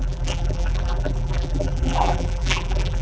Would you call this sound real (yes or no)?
no